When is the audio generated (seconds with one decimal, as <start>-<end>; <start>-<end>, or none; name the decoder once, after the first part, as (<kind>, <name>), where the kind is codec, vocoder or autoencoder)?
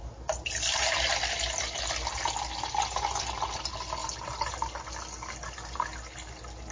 none